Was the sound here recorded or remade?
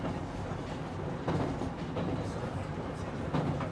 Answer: recorded